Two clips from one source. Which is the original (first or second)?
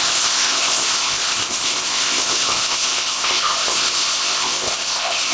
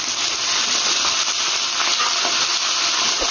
second